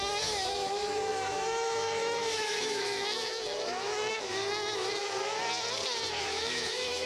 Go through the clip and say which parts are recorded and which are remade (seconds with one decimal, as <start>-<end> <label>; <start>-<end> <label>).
0.0-5.0 remade; 5.0-6.2 recorded; 6.2-7.1 remade